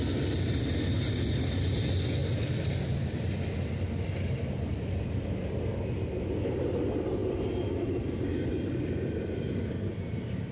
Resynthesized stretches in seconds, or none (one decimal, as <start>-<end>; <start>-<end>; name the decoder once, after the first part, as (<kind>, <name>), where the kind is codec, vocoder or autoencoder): none